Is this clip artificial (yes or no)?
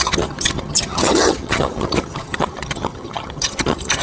yes